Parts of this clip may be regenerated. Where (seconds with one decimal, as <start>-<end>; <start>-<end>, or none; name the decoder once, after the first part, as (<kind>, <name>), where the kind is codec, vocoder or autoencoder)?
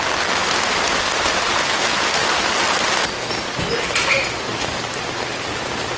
0.0-2.2 (vocoder, BigVGAN v2); 4.4-6.0